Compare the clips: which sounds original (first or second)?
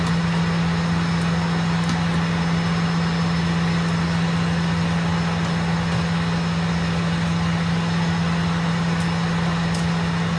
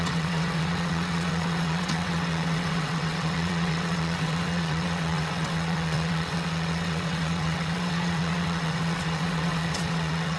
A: first